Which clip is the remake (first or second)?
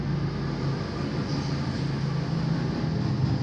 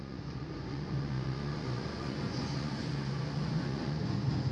second